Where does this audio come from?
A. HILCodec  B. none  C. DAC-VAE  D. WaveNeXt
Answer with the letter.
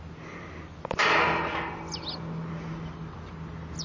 B